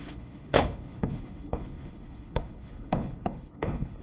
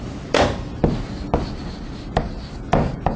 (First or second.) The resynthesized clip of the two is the first